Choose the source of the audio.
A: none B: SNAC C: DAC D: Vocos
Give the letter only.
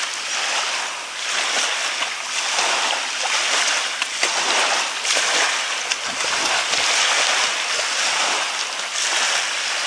A